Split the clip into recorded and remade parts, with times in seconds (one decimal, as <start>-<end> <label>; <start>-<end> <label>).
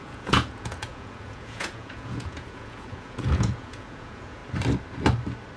0.0-4.4 remade; 4.4-5.6 recorded